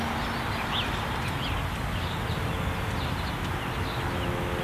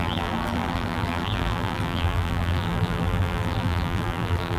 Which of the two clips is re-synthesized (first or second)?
second